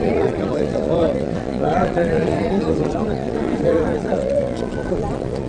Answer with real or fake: fake